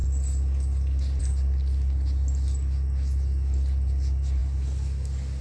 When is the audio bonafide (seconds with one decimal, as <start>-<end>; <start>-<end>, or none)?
0.0-5.4